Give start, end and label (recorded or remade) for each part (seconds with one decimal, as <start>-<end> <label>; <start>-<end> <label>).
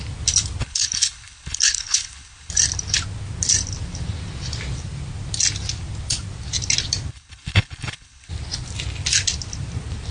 0.0-0.6 recorded; 0.6-2.5 remade; 2.5-7.1 recorded; 7.1-8.3 remade; 8.3-10.1 recorded